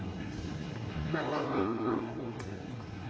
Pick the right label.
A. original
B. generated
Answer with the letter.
B